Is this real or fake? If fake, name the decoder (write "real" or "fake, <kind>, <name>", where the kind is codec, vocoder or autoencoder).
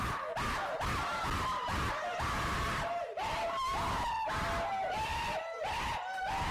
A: real